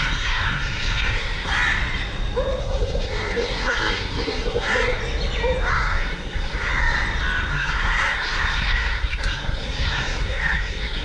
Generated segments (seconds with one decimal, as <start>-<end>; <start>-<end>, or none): 0.0-1.5; 2.6-5.0; 5.7-6.7; 7.5-11.0